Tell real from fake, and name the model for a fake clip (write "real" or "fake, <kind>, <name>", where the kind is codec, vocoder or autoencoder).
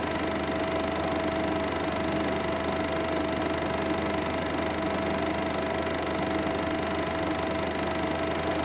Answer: real